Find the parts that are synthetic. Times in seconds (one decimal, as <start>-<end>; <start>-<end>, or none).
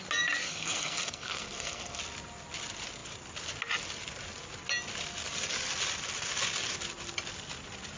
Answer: 0.4-2.0